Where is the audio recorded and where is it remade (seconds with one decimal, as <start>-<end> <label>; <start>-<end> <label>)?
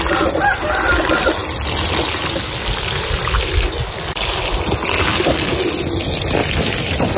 0.0-7.2 recorded